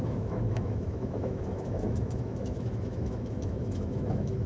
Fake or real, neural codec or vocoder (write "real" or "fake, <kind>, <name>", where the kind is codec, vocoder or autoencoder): fake, autoencoder, DAC-VAE